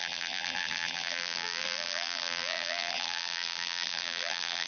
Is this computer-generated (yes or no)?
yes